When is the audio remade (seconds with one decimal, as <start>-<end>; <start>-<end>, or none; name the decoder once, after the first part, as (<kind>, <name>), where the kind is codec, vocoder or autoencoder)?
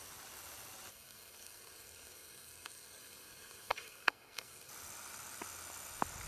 0.9-4.7 (codec, SNAC)